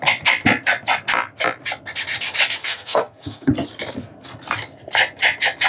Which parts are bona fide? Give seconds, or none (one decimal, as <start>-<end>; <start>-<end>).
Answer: 0.0-2.6; 3.5-5.7